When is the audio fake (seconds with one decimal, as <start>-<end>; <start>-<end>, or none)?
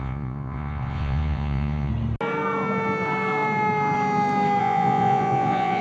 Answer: 0.0-1.9; 4.6-5.8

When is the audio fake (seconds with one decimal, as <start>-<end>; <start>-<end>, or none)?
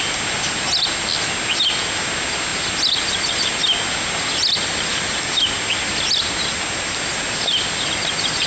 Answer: none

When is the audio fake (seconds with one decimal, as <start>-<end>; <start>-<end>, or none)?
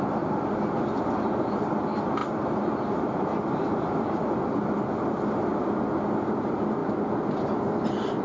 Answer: none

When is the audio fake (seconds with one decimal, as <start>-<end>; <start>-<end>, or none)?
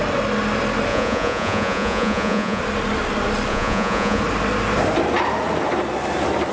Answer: 0.9-2.6; 3.5-4.2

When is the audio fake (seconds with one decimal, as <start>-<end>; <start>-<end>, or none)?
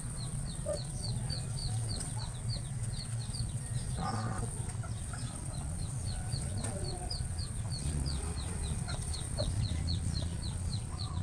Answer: 0.0-11.2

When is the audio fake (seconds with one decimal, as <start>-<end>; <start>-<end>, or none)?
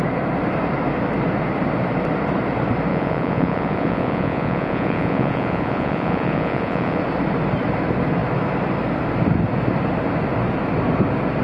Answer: 2.9-7.0